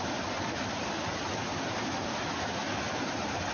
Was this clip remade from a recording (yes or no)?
no